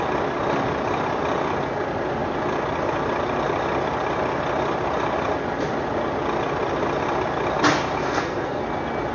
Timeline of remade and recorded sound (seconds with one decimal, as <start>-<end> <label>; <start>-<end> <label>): 0.0-8.0 recorded; 8.0-8.6 remade; 8.6-9.1 recorded